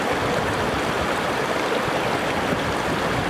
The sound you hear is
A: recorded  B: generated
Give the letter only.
A